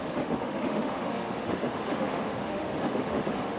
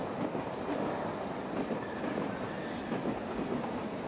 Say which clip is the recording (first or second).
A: second